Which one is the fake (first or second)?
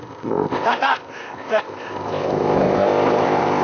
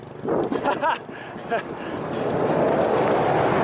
first